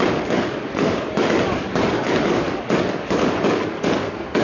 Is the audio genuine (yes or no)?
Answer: no